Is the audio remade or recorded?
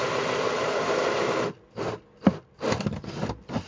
recorded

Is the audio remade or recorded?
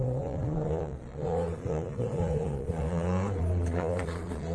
remade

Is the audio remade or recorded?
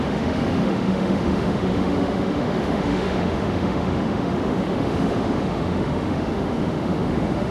remade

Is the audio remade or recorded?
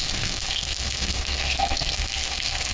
remade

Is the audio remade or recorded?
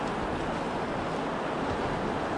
recorded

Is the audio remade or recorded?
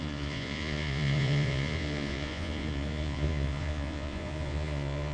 remade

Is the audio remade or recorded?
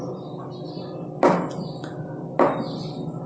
recorded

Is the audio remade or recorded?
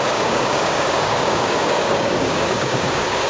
remade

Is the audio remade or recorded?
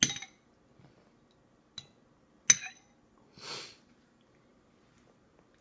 recorded